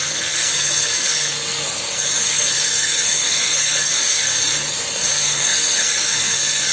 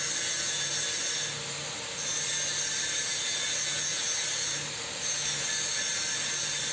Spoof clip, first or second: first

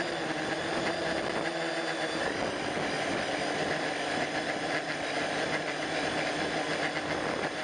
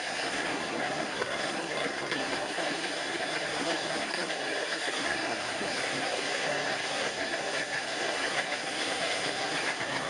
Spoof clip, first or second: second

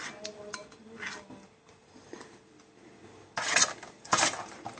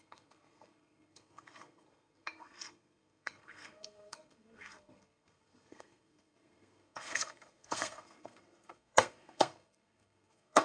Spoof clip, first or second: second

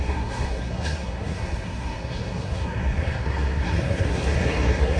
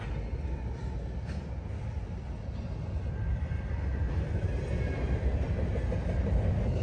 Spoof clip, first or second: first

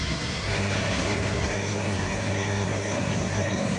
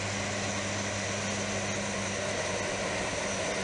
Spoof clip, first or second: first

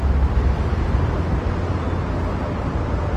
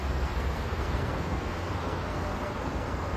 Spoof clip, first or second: second